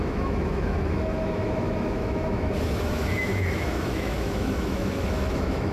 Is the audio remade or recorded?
remade